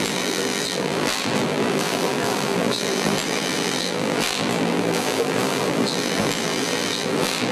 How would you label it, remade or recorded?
remade